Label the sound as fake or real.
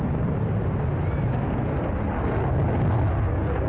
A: real